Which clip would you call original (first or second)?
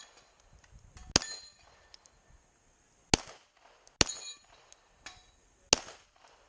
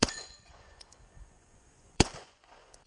first